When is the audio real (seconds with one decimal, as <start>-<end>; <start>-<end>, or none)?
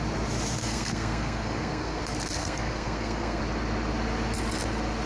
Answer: 0.0-0.6; 2.0-2.4; 3.4-5.1